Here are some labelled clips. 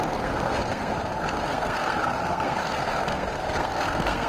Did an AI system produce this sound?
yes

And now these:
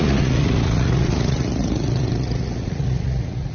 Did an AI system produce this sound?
yes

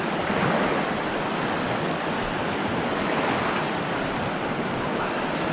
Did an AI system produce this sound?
no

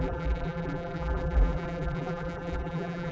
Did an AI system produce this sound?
yes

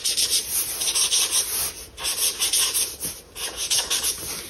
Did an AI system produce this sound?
no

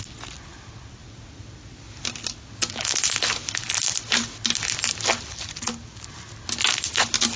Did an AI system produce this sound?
no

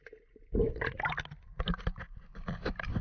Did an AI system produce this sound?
no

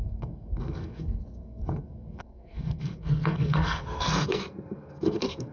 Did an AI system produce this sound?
yes